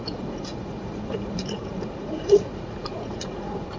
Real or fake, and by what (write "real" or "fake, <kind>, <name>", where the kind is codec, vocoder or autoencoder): fake, vocoder, Vocos